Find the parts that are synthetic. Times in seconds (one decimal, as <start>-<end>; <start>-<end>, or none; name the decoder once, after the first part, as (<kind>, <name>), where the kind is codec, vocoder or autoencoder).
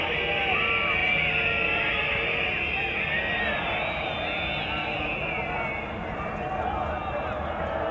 none